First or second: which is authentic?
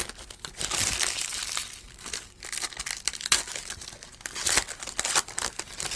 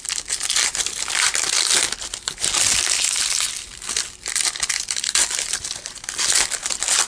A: first